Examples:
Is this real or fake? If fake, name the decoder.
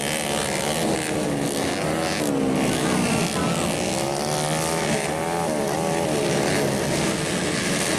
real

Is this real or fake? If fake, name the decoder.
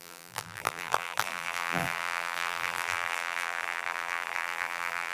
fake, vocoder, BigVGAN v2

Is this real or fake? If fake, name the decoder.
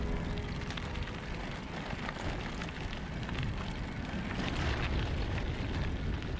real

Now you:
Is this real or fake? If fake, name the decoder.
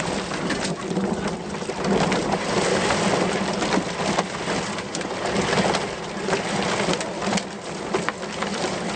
real